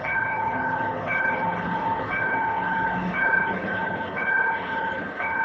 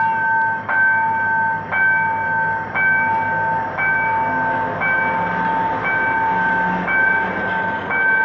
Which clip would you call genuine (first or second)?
second